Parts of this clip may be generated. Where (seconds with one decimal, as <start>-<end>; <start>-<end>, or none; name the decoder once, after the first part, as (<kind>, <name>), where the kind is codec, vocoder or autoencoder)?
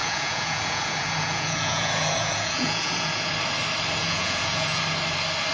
0.0-3.3 (vocoder, Vocos); 4.0-4.8